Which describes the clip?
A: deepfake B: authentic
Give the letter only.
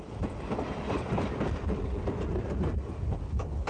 B